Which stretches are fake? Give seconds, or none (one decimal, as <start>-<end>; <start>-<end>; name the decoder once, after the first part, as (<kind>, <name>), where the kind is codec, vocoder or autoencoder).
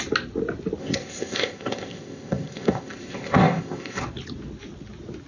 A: 0.8-4.0 (codec, ZipCodec)